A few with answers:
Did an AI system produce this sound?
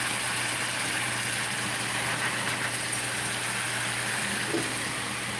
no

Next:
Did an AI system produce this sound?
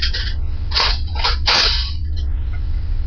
yes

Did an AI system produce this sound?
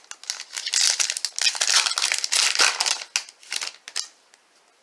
no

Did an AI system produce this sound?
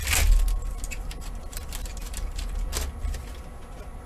no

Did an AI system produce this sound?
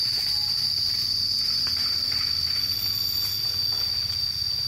no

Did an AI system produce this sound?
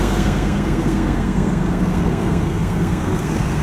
yes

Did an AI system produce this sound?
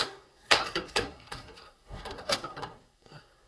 yes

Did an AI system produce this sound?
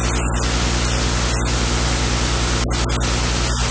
no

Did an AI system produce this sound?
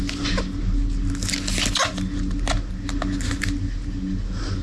no